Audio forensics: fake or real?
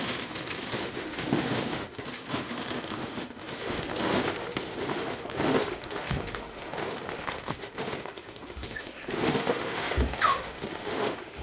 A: fake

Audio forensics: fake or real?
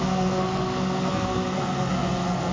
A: fake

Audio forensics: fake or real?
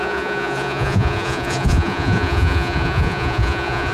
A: fake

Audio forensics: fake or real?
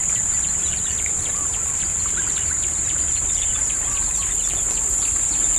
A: fake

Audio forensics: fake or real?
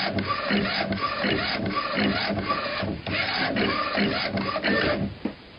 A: real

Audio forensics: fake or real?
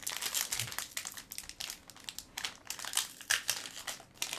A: real